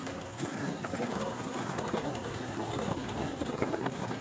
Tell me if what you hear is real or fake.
fake